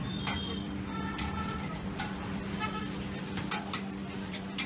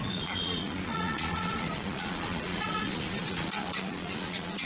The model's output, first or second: second